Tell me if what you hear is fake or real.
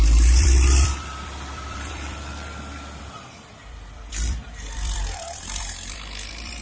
fake